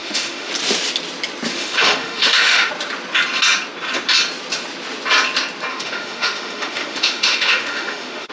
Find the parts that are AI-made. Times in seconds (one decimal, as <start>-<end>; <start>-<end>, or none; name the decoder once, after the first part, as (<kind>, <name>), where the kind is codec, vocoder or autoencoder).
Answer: 0.0-0.5 (autoencoder, DAC-VAE); 1.5-2.7; 5.7-8.3